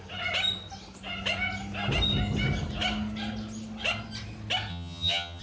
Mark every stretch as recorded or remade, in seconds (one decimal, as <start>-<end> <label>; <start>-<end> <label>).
0.0-4.7 recorded; 4.7-5.4 remade